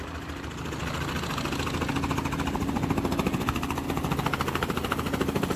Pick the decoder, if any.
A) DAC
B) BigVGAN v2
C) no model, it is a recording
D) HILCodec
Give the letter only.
C